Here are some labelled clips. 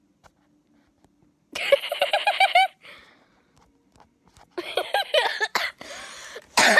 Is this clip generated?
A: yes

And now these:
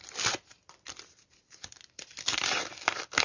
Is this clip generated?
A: yes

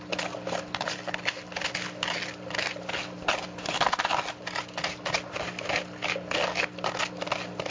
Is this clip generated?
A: no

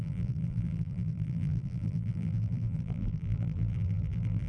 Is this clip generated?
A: yes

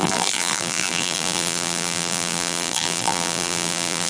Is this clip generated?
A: yes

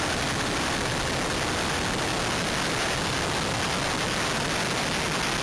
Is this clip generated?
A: no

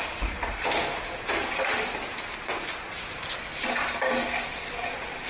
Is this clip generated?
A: no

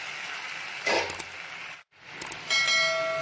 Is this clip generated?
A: no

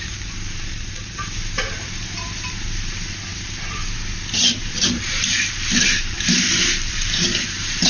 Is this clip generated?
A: yes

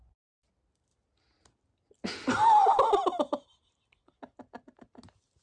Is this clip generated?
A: no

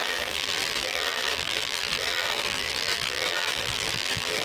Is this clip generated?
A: yes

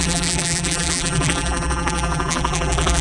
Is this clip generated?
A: yes